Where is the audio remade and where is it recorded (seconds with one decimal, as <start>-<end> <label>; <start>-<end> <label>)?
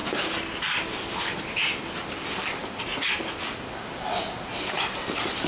0.0-5.5 recorded